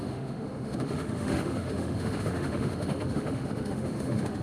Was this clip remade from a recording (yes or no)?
yes